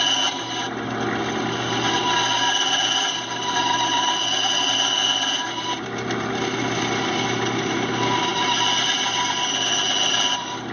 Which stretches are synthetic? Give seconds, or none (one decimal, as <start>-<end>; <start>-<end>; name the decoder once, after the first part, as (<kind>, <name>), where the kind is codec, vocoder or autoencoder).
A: none